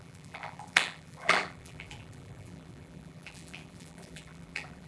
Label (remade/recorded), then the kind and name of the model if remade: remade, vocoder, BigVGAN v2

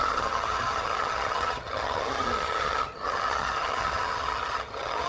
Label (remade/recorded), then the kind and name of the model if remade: remade, vocoder, HiFi-GAN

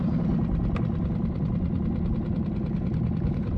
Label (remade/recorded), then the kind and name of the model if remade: recorded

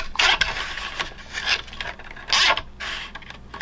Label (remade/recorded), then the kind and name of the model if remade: recorded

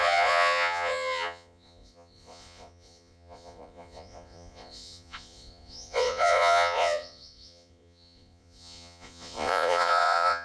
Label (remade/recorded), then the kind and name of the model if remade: remade, vocoder, Vocos